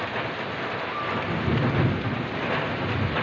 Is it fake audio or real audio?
real